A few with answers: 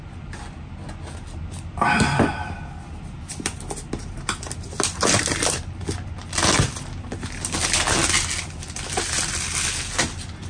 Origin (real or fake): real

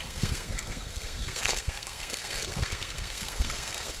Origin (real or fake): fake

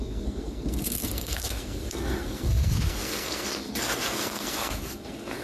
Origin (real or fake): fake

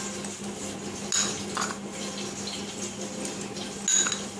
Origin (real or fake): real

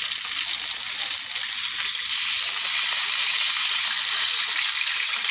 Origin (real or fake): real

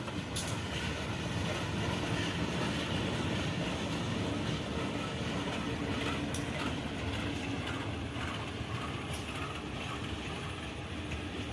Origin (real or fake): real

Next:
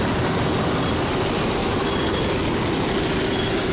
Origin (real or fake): real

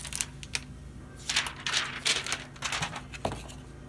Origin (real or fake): real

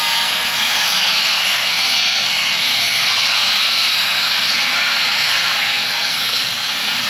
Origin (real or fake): fake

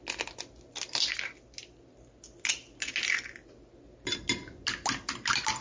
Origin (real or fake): real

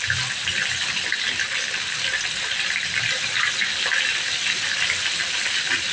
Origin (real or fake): real